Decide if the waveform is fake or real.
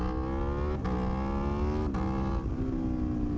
real